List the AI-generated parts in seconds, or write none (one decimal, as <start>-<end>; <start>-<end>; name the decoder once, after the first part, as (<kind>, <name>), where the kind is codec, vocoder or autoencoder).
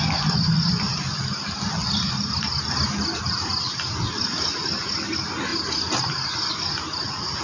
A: none